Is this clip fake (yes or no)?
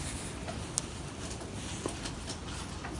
no